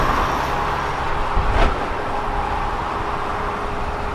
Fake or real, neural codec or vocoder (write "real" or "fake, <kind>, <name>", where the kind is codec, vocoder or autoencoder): real